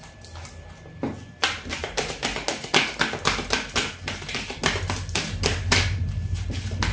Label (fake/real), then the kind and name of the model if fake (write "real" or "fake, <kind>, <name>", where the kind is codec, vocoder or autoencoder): real